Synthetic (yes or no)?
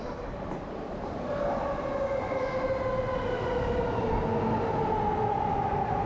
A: no